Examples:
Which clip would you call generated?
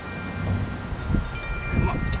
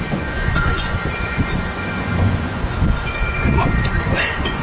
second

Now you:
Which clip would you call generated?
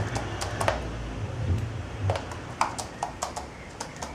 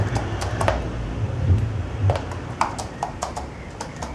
second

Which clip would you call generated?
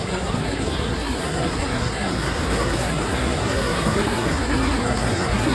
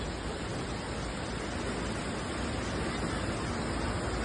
first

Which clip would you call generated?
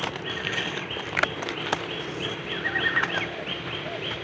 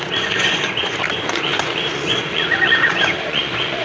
second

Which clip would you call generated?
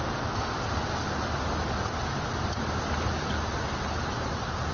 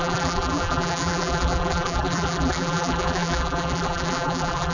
second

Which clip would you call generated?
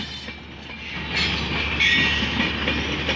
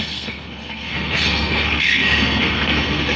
second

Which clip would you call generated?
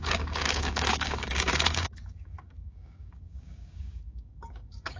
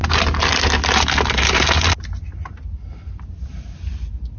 first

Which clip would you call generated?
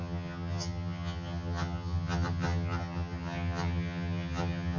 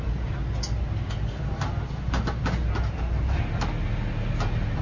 first